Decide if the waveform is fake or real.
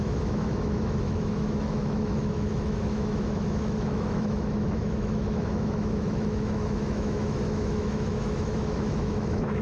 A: fake